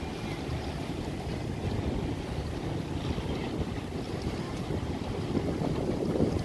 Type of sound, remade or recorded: recorded